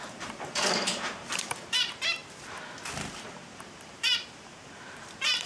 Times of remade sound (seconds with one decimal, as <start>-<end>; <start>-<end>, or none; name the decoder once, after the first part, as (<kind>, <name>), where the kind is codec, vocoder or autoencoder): 0.0-2.2 (vocoder, BigVGAN v2); 3.1-5.5